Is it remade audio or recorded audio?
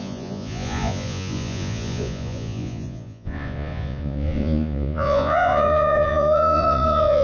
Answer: remade